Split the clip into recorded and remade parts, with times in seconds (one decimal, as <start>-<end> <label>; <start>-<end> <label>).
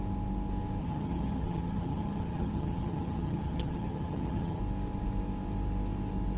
0.0-0.8 recorded; 0.8-4.6 remade; 4.6-6.4 recorded